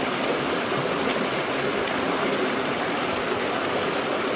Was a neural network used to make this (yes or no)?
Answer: no